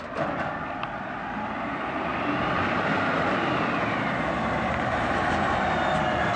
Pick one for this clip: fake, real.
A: real